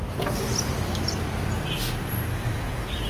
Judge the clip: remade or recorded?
recorded